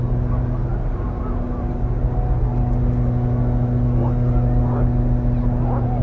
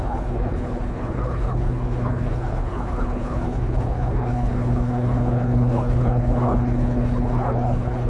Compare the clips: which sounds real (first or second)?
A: first